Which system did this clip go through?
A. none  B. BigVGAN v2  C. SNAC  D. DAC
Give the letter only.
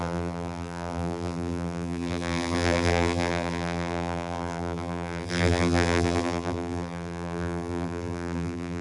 B